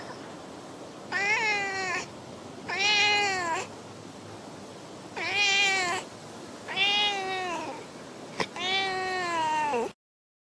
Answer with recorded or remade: recorded